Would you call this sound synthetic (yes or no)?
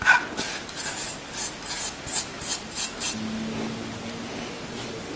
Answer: no